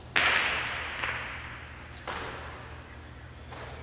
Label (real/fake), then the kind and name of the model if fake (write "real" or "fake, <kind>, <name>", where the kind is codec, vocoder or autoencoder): real